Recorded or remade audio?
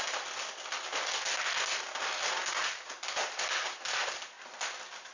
recorded